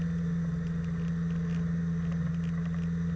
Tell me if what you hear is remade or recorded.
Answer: recorded